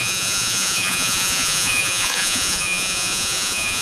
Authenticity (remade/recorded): remade